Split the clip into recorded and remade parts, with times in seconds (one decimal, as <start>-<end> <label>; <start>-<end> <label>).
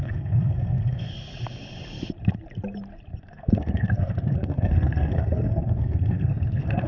0.0-1.1 remade; 1.1-3.2 recorded; 3.2-6.9 remade